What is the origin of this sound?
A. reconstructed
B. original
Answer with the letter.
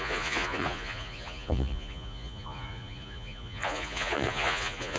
A